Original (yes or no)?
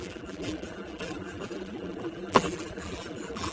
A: no